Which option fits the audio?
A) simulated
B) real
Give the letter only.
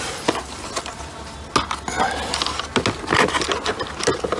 B